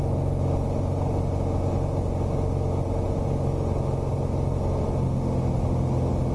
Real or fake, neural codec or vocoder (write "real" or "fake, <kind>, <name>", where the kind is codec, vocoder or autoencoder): real